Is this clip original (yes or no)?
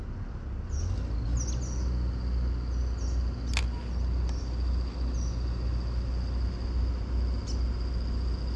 yes